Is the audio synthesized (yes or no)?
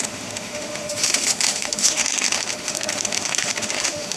yes